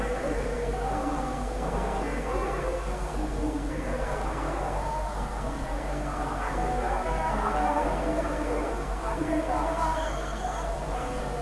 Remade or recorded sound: remade